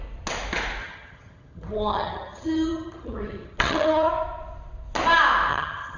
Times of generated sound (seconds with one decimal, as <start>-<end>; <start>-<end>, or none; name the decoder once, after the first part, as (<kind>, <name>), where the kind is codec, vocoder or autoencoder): 0.8-4.1 (vocoder, HiFi-GAN); 5.5-6.0